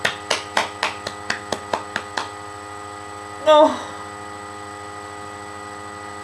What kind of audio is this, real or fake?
real